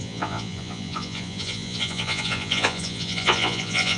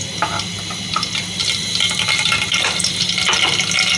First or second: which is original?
second